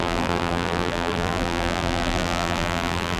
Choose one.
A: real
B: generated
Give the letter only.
B